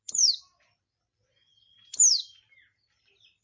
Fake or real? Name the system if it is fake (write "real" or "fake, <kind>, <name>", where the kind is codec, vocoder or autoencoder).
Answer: real